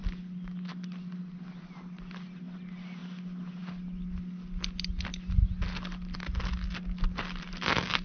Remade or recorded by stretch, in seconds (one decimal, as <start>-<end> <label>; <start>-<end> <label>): 0.0-8.0 recorded